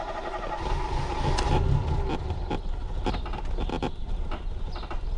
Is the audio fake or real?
real